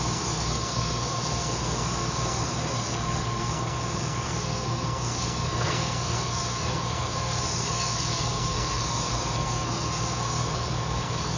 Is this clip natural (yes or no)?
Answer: no